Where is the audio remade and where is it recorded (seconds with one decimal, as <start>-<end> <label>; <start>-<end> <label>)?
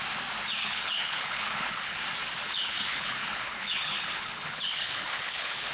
0.0-0.6 recorded; 0.6-2.0 remade; 2.0-2.4 recorded; 2.4-5.7 remade